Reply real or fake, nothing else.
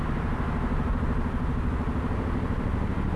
real